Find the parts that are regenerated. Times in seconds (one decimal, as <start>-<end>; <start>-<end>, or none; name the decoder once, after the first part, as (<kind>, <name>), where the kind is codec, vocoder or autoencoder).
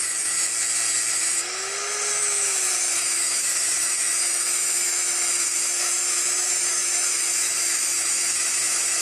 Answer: 0.0-0.5 (autoencoder, DAC-VAE); 1.1-9.0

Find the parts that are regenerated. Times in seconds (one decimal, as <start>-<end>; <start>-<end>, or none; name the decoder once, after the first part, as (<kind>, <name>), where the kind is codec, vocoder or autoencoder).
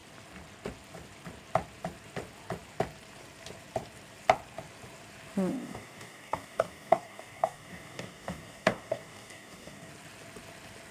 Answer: 5.5-9.9 (codec, DAC)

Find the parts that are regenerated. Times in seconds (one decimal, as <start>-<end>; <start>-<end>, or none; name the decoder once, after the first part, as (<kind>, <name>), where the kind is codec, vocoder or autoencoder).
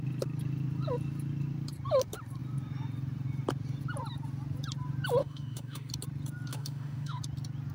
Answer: 5.2-5.9 (autoencoder, DAC-VAE); 6.5-7.2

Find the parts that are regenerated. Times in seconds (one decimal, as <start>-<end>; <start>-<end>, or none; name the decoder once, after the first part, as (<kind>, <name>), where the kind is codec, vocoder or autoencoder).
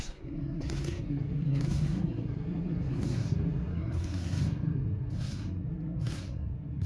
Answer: 0.0-6.9 (codec, SNAC)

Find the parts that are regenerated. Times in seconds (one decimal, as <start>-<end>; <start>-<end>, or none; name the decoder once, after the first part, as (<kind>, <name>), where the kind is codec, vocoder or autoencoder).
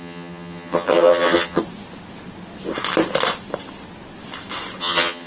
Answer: 0.0-1.6 (vocoder, HiFi-GAN); 4.8-5.3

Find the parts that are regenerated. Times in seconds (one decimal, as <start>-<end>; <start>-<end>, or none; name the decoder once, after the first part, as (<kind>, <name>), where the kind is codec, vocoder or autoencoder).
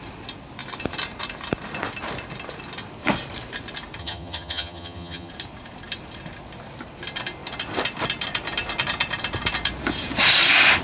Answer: 4.0-5.3 (vocoder, HiFi-GAN)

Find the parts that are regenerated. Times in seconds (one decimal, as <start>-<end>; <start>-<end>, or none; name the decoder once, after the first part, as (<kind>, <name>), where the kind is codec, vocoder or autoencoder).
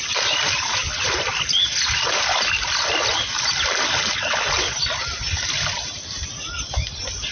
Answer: none